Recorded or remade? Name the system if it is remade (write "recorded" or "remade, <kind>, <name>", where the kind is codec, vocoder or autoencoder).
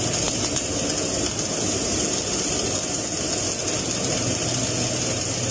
recorded